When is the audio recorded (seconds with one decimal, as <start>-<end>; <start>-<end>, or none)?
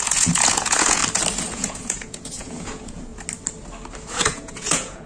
1.0-1.5; 3.1-4.1